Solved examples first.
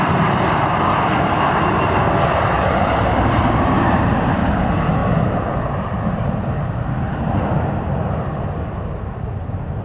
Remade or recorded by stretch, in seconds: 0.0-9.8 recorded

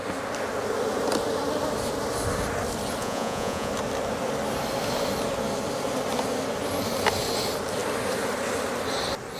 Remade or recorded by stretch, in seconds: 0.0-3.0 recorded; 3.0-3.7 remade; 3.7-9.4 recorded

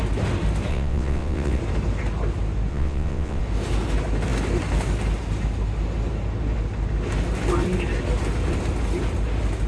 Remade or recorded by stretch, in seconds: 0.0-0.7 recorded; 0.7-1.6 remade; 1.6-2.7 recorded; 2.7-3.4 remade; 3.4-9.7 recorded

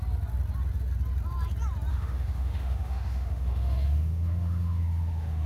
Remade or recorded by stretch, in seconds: 0.0-1.9 recorded; 1.9-5.5 remade

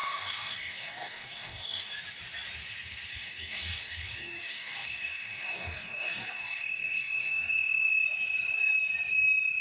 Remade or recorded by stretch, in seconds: 0.0-1.9 remade; 1.9-3.1 recorded; 3.1-7.9 remade; 7.9-9.6 recorded